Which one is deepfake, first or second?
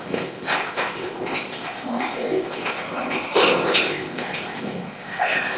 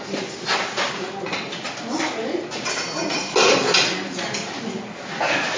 first